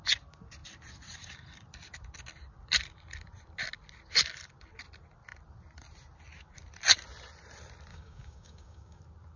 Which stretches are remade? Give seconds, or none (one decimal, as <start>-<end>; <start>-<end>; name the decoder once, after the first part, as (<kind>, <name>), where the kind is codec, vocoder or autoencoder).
7.9-9.0 (codec, DAC)